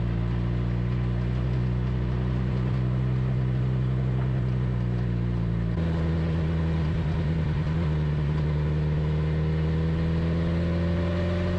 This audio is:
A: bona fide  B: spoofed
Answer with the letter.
A